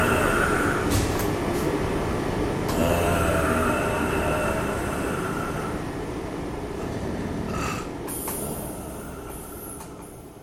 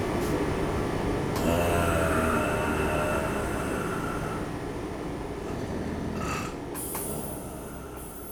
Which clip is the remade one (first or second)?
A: first